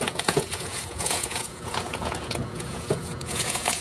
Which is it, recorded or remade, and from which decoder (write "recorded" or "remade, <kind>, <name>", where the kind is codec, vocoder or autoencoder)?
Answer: remade, vocoder, Vocos